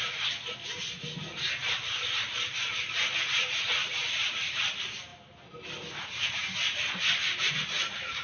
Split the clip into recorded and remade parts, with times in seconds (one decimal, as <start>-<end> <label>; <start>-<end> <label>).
0.0-1.6 recorded; 1.6-4.6 remade; 4.6-8.2 recorded

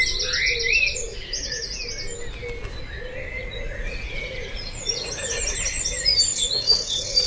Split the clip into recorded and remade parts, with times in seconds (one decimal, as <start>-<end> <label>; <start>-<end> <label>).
0.0-1.1 recorded; 1.1-1.8 remade; 1.8-3.4 recorded; 3.4-5.4 remade; 5.4-6.3 recorded; 6.3-7.3 remade

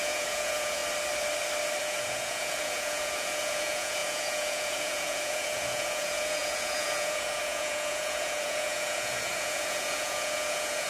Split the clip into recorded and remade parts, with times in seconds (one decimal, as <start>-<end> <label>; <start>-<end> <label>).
0.0-0.8 remade; 0.8-1.8 recorded; 1.8-10.9 remade

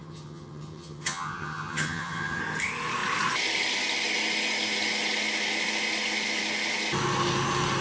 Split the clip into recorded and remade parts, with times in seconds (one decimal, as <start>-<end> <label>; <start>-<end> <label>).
0.0-2.4 remade; 2.4-7.8 recorded

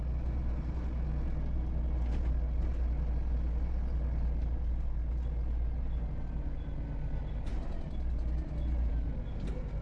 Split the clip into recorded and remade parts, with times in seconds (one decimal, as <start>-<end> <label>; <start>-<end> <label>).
0.0-9.8 recorded

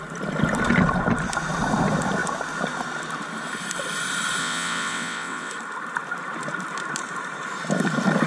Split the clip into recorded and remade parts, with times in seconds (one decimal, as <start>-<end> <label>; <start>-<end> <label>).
0.0-4.4 recorded; 4.4-5.5 remade; 5.5-8.3 recorded

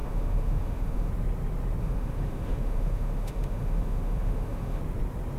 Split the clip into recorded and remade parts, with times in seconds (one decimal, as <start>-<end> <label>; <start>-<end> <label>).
0.0-1.1 remade; 1.1-1.8 recorded; 1.8-4.8 remade; 4.8-5.4 recorded